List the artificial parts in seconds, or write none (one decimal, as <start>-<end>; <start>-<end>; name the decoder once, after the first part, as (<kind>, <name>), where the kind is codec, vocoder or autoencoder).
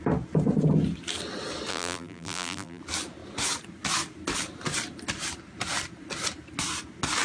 1.7-2.8 (vocoder, BigVGAN v2)